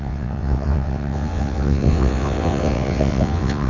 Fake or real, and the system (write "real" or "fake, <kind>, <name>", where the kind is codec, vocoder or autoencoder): fake, vocoder, WaveNeXt